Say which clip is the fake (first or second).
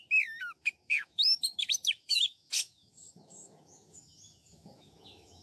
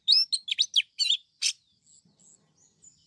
first